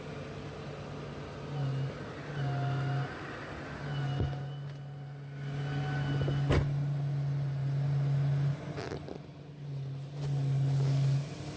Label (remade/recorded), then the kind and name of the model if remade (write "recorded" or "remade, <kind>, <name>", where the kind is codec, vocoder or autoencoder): recorded